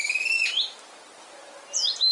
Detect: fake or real real